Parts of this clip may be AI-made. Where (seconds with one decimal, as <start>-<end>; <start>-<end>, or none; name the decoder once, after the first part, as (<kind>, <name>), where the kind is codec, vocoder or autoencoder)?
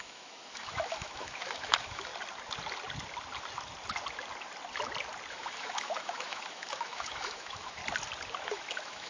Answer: 0.0-2.1 (autoencoder, DAC-VAE); 5.3-7.8; 8.5-9.1